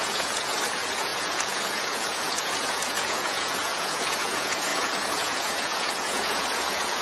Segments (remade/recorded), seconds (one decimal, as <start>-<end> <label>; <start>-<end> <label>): 0.0-7.0 remade